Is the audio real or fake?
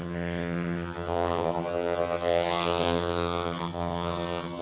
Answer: fake